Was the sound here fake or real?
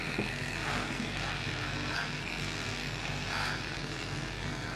fake